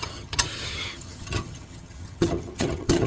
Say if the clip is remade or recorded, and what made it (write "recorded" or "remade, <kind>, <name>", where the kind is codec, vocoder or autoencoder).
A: remade, vocoder, HiFi-GAN